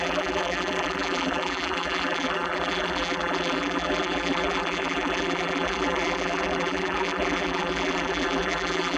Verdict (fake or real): fake